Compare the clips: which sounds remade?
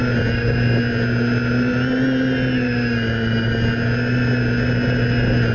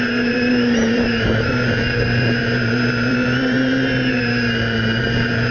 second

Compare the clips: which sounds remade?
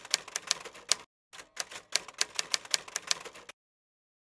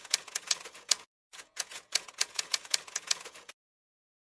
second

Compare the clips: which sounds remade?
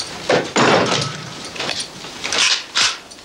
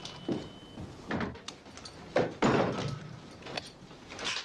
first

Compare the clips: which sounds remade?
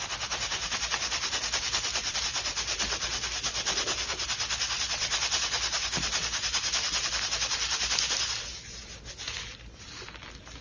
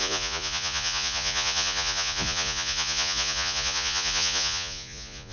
second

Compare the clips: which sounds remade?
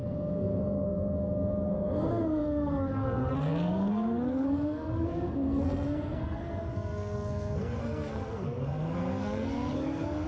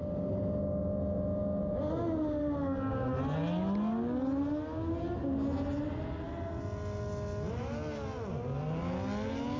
first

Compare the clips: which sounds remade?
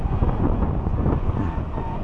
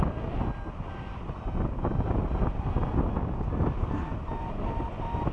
first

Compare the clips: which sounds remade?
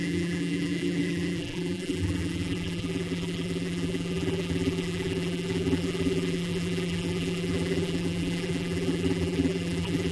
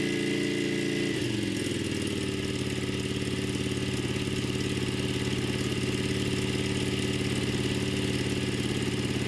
first